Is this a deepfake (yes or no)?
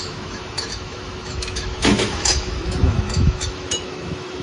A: yes